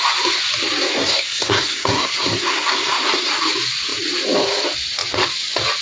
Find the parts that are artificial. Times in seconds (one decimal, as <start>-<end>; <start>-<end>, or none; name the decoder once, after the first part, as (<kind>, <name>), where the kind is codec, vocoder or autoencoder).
0.9-3.3 (codec, SNAC)